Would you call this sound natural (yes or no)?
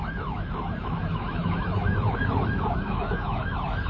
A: no